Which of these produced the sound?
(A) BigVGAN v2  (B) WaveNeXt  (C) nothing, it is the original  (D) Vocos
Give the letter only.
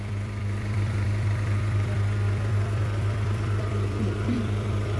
A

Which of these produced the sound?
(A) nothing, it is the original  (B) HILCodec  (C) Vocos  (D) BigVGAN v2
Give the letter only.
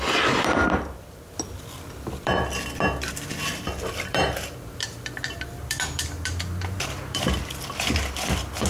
D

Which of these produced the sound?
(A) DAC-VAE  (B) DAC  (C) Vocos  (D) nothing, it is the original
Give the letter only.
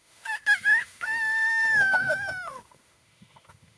A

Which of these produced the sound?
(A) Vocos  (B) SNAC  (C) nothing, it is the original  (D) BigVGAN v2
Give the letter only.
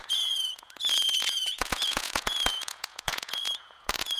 A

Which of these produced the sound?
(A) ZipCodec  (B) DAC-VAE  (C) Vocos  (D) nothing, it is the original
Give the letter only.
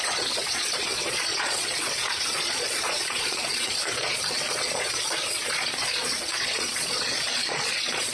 C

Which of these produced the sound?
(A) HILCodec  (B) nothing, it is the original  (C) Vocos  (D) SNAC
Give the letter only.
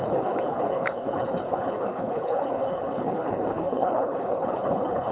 A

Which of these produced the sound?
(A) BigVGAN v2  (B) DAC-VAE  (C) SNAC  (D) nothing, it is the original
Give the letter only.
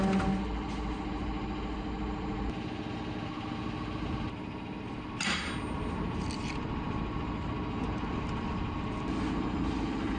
D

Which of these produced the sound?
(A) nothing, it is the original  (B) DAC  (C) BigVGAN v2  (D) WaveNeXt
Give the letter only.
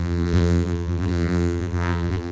C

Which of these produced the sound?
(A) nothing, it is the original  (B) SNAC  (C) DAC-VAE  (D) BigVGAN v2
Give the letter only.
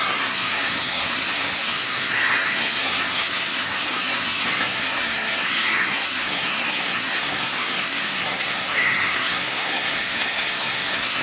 B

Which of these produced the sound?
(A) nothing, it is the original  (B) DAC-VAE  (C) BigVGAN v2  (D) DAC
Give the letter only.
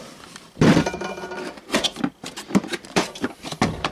C